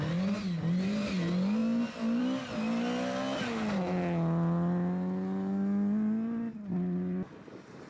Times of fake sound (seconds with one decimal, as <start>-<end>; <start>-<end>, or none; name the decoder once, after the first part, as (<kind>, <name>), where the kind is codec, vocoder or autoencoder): none